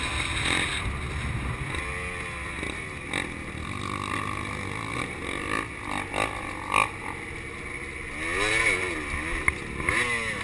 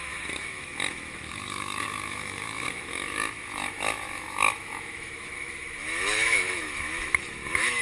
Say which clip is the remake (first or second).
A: second